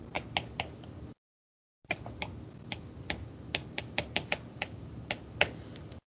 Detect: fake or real real